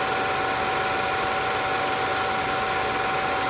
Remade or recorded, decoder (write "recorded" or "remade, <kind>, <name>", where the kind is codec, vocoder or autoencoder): recorded